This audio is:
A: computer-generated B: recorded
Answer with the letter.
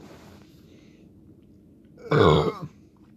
B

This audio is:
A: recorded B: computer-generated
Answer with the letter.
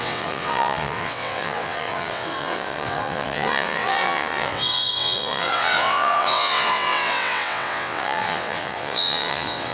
B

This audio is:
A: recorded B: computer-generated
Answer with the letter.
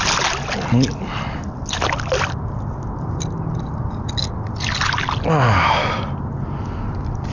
A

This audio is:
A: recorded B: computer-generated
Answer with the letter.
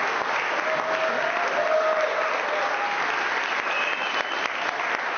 A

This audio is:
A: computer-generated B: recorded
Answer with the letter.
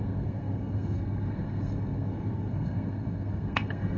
A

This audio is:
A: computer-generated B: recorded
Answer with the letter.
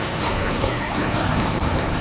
A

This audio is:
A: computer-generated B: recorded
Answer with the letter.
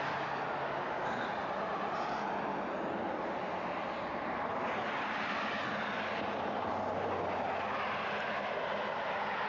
B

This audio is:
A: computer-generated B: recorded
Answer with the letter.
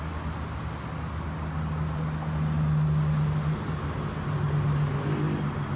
B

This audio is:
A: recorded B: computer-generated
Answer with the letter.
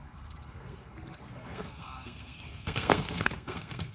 B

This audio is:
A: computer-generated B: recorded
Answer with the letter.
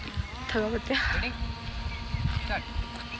B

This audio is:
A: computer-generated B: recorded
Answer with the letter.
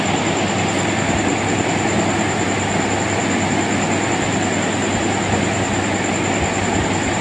B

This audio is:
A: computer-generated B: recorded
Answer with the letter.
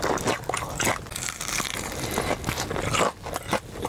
B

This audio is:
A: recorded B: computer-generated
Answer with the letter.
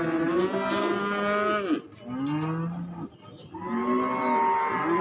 A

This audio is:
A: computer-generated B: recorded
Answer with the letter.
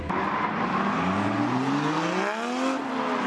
B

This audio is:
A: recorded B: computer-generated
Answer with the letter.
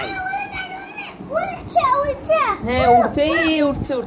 B